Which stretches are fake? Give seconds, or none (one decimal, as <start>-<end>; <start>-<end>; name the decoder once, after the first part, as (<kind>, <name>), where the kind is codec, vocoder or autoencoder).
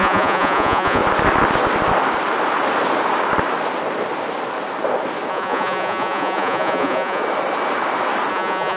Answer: 0.0-1.0 (vocoder, Vocos); 5.3-7.2; 8.3-8.8